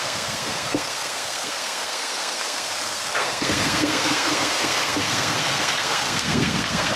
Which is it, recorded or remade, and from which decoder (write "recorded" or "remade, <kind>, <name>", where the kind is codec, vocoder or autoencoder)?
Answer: remade, codec, SNAC